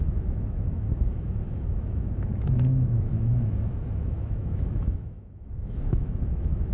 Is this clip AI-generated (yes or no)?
yes